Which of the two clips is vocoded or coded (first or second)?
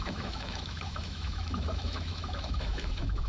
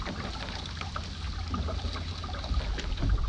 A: first